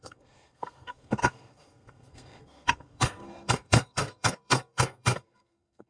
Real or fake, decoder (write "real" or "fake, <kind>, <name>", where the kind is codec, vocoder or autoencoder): fake, codec, SNAC